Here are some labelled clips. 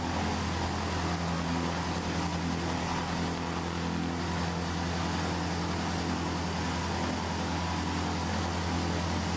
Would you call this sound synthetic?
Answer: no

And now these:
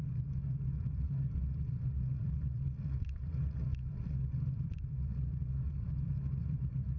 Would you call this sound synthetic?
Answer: yes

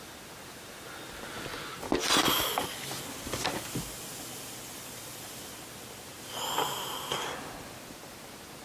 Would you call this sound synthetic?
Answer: no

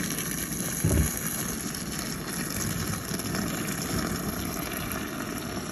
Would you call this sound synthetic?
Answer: no